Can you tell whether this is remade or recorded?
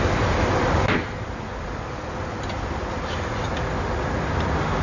recorded